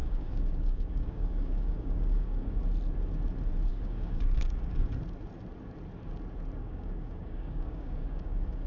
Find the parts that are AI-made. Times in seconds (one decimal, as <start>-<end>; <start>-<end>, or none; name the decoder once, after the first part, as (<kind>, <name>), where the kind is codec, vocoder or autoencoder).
0.0-2.6 (codec, DAC); 3.7-4.9; 6.6-8.7